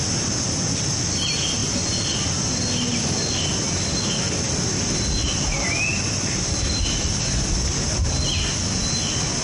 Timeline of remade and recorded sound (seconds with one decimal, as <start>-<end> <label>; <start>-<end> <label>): 0.0-1.6 recorded; 1.6-3.3 remade; 3.3-5.3 recorded; 5.3-7.8 remade; 7.8-9.4 recorded